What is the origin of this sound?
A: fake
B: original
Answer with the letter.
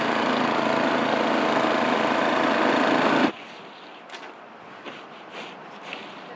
B